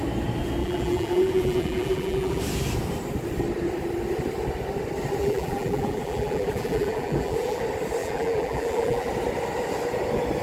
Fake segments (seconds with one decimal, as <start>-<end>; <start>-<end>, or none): 0.6-2.4; 5.2-7.6; 8.0-9.1